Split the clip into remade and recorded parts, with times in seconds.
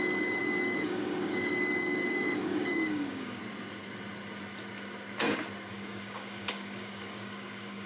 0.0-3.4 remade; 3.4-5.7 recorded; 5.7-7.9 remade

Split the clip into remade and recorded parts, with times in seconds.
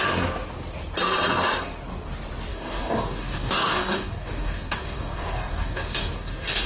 0.0-2.5 recorded; 2.5-6.7 remade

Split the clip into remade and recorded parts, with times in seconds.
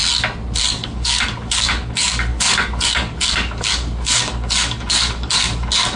0.0-0.6 recorded; 0.6-6.0 remade